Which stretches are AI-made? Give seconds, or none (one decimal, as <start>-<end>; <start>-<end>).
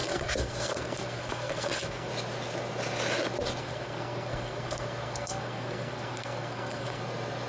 0.0-2.1; 3.6-7.0